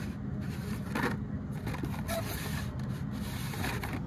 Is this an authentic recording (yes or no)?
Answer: yes